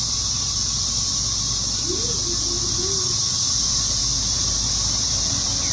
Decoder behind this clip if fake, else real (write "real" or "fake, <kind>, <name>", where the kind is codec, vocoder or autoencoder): real